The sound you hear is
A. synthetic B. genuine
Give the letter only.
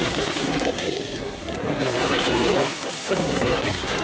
A